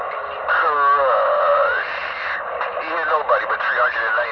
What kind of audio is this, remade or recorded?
recorded